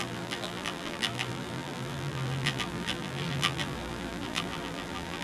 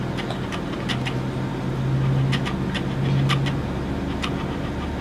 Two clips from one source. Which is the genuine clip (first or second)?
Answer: second